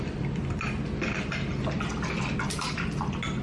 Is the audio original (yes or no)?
yes